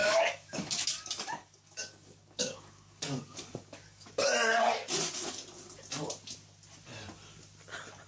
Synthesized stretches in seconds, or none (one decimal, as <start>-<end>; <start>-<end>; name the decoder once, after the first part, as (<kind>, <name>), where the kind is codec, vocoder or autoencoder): 0.0-4.1 (codec, DAC)